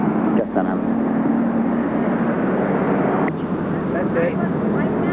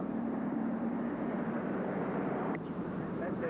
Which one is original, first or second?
first